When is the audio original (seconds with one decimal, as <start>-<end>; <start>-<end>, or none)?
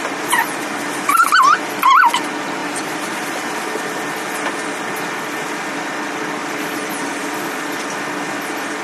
0.0-2.6; 3.7-6.4; 7.2-8.8